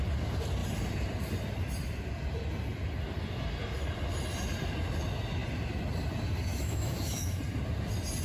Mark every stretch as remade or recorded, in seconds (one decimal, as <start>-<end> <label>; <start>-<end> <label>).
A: 0.0-6.5 recorded; 6.5-7.4 remade; 7.4-8.2 recorded